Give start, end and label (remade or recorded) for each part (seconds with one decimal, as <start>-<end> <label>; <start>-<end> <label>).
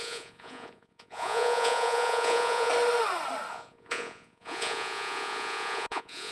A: 0.0-2.7 remade; 2.7-3.5 recorded; 3.5-6.3 remade